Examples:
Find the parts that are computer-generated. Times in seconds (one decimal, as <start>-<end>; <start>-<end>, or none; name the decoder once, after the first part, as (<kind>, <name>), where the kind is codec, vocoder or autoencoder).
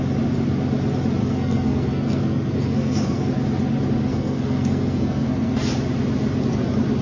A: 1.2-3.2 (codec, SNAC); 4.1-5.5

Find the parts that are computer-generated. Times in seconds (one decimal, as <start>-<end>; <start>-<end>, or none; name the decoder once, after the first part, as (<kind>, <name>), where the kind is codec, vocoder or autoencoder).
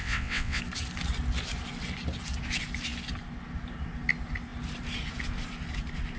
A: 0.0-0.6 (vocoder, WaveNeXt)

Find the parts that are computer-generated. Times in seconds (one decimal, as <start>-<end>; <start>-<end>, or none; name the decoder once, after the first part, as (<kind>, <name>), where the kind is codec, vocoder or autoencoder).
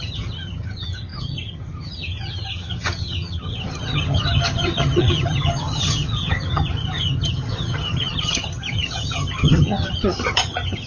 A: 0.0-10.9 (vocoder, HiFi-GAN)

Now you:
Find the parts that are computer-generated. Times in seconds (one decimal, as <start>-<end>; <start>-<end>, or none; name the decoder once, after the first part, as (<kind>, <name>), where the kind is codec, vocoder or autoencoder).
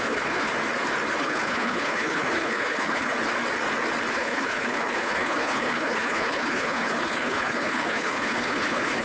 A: 0.0-0.5 (codec, HILCodec); 1.2-3.1; 4.1-9.0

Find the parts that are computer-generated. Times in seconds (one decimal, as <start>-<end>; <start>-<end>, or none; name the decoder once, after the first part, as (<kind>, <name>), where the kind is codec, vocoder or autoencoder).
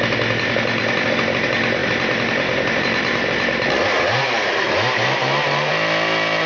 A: 1.8-5.7 (vocoder, BigVGAN v2)